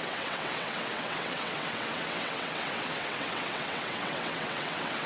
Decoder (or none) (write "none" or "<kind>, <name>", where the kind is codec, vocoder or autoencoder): vocoder, WaveNeXt